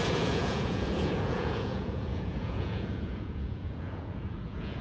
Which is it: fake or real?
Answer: fake